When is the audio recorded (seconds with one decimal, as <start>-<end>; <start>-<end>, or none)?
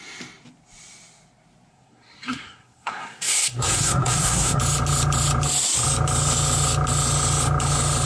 0.0-1.7; 4.6-8.1